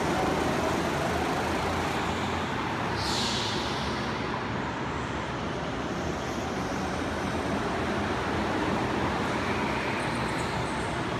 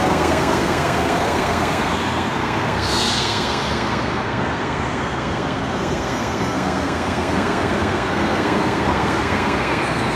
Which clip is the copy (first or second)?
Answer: second